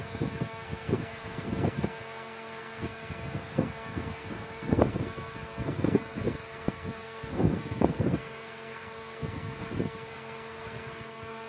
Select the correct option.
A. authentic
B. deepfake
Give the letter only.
B